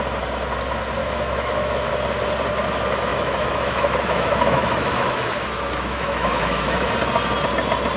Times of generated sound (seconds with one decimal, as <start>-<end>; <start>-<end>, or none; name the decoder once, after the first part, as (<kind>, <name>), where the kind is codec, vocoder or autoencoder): 1.0-1.9 (autoencoder, DAC-VAE); 3.1-6.9